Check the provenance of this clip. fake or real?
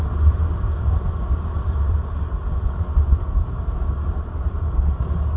real